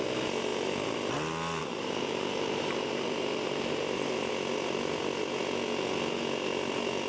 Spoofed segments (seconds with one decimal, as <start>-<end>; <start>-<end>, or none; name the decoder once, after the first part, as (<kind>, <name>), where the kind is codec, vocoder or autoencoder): 1.6-4.3 (vocoder, BigVGAN v2)